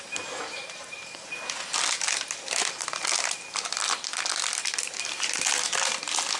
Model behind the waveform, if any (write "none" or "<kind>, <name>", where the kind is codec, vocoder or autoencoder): none